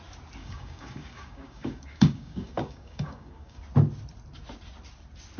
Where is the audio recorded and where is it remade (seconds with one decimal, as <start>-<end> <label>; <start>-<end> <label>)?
0.0-0.4 recorded; 0.4-3.6 remade; 3.6-5.4 recorded